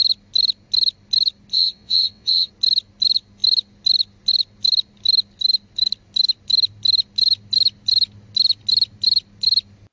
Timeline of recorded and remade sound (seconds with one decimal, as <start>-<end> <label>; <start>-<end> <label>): 0.0-1.5 recorded; 1.5-2.5 remade; 2.5-9.9 recorded